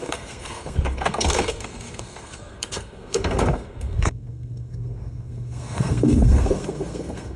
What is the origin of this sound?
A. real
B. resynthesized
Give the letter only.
B